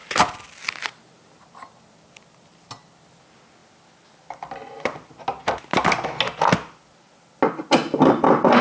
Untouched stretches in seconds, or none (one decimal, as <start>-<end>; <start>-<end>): 0.0-8.6